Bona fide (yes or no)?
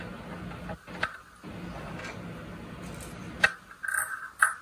yes